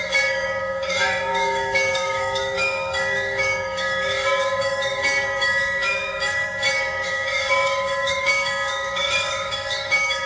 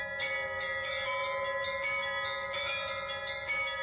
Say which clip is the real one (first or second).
second